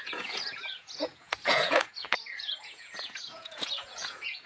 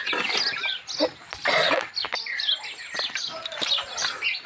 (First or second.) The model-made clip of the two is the first